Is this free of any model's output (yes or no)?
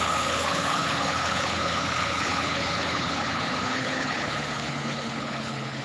no